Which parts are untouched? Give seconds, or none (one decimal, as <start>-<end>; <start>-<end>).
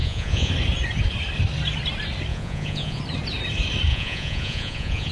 0.5-2.3; 3.0-3.9